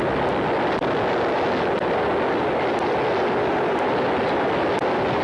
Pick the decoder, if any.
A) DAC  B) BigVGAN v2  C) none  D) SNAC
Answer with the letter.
C